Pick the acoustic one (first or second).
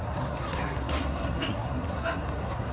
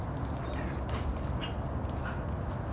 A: second